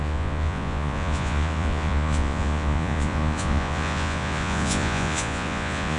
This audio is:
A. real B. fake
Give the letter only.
B